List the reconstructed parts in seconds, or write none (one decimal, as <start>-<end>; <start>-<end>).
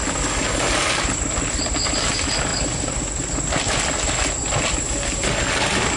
none